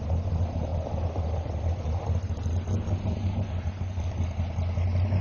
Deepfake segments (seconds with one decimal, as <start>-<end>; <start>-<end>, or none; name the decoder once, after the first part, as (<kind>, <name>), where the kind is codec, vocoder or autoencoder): none